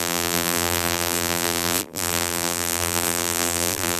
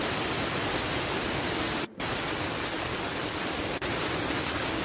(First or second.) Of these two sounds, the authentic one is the second